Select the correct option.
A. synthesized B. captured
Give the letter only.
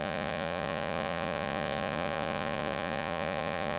A